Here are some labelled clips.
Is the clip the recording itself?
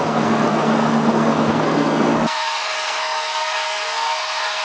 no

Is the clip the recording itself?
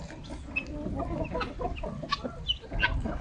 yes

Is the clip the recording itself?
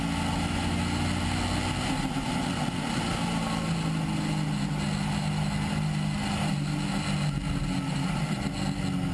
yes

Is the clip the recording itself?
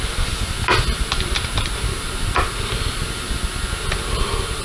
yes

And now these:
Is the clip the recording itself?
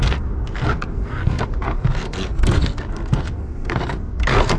no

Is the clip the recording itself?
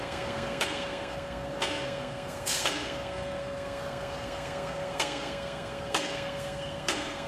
no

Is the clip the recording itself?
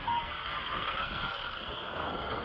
no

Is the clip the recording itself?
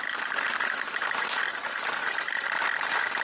yes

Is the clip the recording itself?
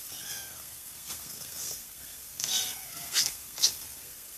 no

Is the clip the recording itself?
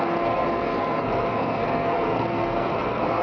no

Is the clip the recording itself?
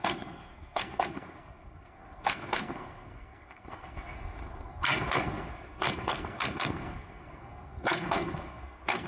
no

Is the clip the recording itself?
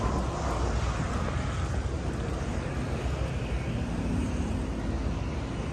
yes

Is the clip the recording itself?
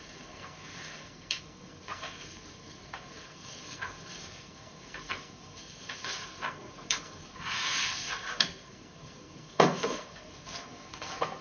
no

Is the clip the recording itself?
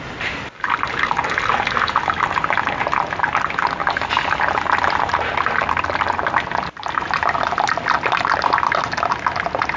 yes